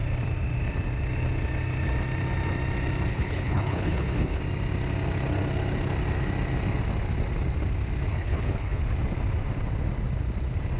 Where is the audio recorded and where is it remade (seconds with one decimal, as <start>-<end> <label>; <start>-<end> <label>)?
0.0-3.1 recorded; 3.1-4.4 remade; 4.4-8.1 recorded; 8.1-8.8 remade; 8.8-10.8 recorded